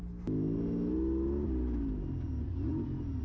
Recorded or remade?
recorded